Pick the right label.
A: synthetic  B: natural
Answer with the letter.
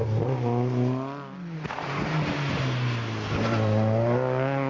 B